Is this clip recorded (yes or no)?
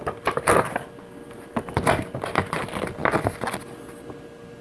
yes